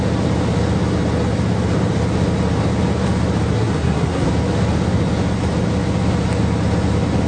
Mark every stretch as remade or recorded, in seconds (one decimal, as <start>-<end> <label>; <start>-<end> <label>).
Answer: 0.0-3.5 recorded; 3.5-4.3 remade; 4.3-7.3 recorded